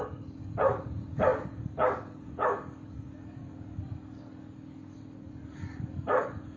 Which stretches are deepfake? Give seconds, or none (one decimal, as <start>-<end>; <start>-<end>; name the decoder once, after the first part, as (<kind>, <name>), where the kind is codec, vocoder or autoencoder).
0.0-6.6 (codec, DAC)